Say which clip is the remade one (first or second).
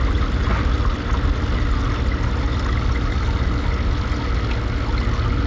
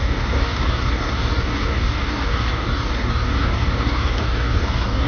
second